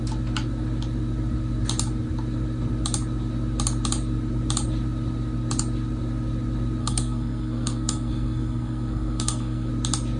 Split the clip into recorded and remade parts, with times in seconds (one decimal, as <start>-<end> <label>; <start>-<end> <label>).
0.0-6.8 recorded; 6.8-9.7 remade; 9.7-10.2 recorded